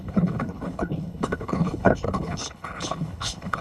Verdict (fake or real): fake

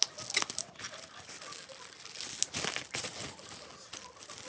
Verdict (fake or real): real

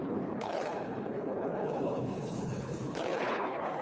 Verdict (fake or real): fake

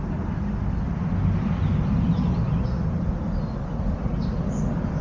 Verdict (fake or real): real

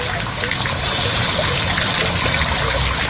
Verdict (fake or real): real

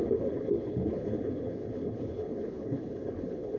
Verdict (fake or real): fake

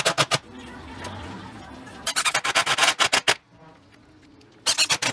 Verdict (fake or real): real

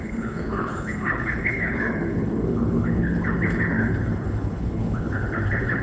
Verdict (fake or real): fake